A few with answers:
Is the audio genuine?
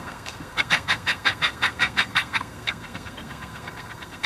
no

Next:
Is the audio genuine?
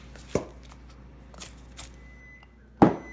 yes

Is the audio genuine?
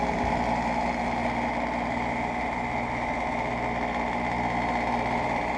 yes